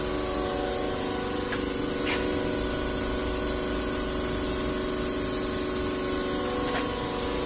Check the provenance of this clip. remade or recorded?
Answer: recorded